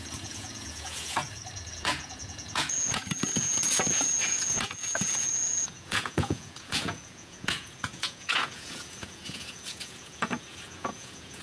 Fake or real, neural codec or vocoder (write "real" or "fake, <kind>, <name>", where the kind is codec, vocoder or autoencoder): fake, vocoder, Vocos